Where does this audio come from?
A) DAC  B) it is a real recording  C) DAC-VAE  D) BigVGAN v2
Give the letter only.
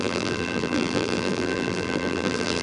D